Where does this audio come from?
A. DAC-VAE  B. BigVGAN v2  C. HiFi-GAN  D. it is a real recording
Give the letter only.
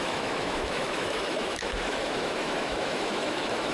A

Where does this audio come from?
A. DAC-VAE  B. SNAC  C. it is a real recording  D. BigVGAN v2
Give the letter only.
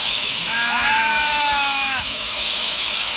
A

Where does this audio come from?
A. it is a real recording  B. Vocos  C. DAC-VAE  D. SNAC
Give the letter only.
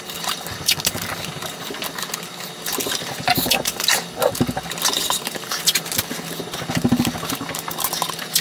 A